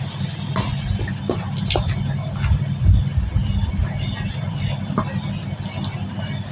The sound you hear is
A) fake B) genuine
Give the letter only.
B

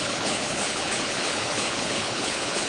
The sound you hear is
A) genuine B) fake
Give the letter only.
B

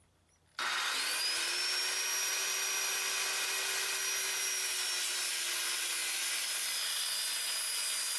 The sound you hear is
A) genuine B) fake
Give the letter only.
A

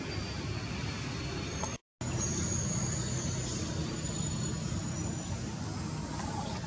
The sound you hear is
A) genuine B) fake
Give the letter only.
A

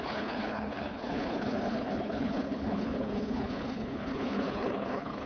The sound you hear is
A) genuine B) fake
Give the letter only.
B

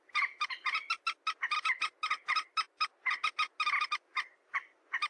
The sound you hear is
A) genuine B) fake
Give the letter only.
A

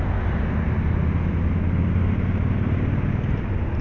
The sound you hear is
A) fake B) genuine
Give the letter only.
B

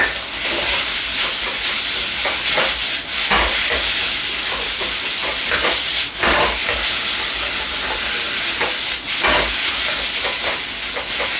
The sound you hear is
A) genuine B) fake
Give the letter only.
A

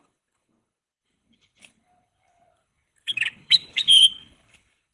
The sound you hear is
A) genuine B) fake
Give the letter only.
B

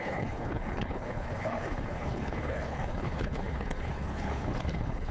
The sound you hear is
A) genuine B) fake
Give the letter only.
B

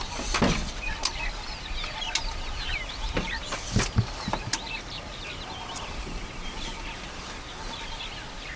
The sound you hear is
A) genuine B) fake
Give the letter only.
A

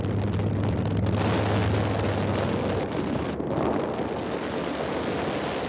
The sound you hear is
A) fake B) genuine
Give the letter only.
B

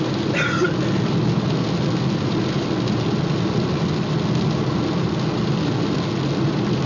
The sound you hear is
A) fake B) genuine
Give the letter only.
B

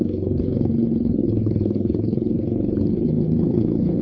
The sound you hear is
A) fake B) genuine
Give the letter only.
A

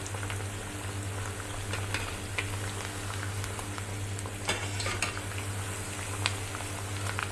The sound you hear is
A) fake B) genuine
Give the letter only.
B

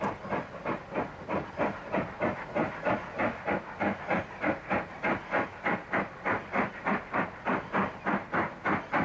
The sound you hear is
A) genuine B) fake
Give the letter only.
A